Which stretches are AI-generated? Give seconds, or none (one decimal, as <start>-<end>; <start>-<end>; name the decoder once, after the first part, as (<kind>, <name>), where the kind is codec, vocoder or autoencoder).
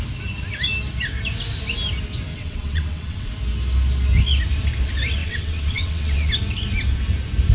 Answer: 2.3-3.3 (vocoder, WaveNeXt); 5.2-6.3